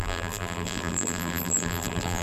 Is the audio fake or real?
fake